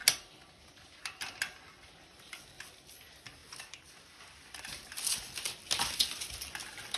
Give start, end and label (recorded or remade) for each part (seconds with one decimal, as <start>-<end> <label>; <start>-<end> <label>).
0.0-7.0 recorded